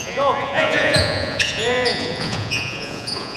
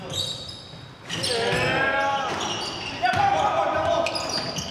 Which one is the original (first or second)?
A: second